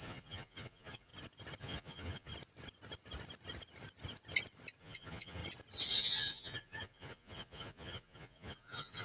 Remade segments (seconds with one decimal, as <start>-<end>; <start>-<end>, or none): 0.0-1.1; 1.6-2.3; 4.8-5.4; 5.9-9.0